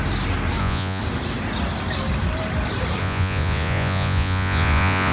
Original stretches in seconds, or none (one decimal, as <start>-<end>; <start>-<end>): 0.0-0.6; 1.0-3.0